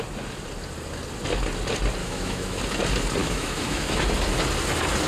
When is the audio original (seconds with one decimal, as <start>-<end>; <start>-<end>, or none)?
0.0-2.0; 2.6-3.2; 4.0-5.1